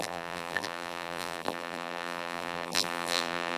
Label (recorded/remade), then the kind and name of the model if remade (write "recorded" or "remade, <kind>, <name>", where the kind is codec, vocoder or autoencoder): remade, vocoder, BigVGAN v2